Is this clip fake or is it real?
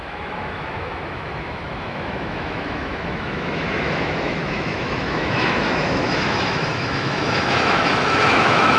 fake